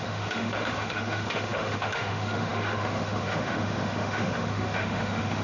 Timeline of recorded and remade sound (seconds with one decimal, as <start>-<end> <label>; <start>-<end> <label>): 0.0-5.4 remade